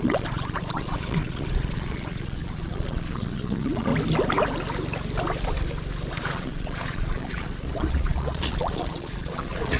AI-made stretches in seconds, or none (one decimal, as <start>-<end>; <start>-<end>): 0.0-3.9; 6.1-9.8